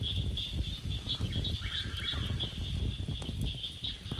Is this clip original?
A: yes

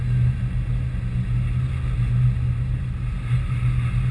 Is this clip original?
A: yes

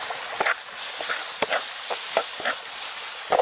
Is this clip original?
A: yes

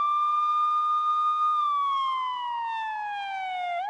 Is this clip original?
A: yes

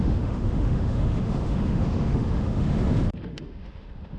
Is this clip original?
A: no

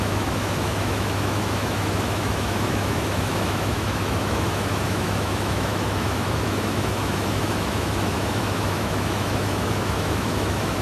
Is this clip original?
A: no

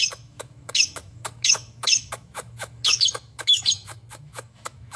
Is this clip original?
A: no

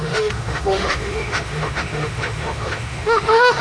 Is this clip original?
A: no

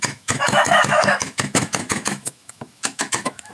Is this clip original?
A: no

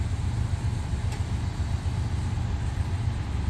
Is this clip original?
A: yes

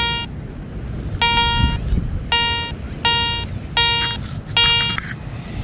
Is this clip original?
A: yes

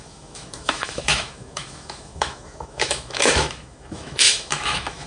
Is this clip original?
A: no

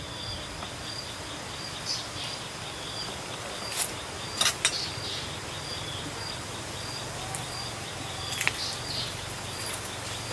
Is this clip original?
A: yes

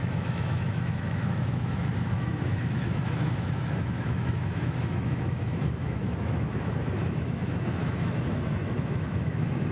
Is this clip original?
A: no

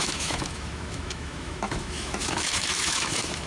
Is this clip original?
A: no